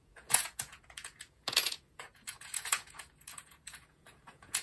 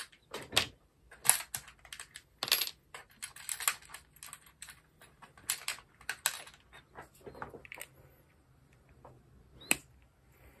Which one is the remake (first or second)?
first